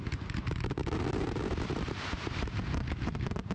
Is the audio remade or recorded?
remade